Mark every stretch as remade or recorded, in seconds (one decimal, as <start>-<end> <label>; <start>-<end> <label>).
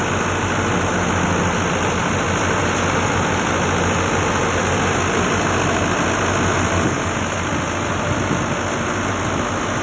0.0-9.8 recorded